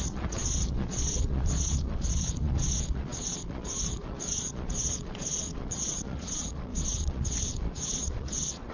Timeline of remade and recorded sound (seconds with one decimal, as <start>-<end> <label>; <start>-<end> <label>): 0.0-8.7 remade